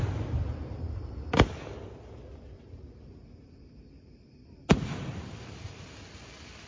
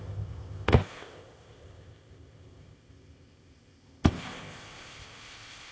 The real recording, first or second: first